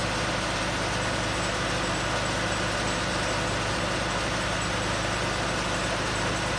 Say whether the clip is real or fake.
real